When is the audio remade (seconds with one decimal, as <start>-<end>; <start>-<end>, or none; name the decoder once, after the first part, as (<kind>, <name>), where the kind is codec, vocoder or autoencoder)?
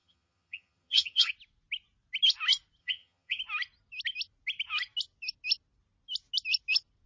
0.0-1.3 (vocoder, HiFi-GAN); 2.8-3.4